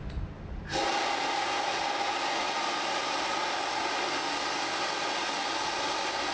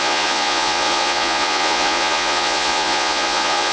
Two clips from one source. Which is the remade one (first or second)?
second